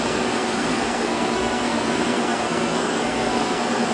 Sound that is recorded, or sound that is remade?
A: remade